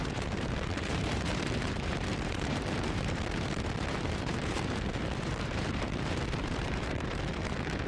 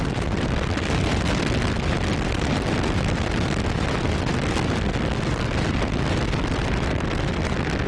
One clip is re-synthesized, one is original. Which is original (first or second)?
second